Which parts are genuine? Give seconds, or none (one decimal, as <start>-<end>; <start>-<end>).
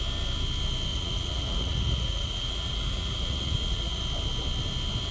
0.0-0.9; 4.0-5.1